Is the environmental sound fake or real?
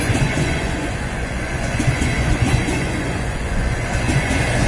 fake